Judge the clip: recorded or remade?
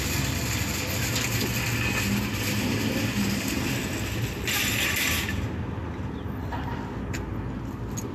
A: recorded